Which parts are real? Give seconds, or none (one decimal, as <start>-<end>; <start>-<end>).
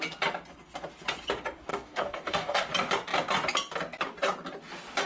0.0-1.7; 2.7-5.1